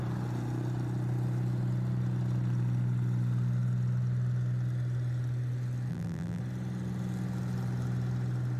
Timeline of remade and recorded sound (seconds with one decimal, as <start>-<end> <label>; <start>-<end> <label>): 0.0-5.9 recorded; 5.9-6.4 remade; 6.4-8.6 recorded